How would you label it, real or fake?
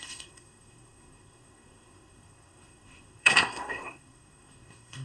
fake